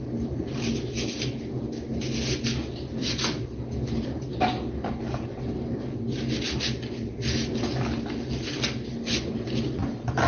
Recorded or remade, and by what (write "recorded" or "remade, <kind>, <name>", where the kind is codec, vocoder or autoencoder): recorded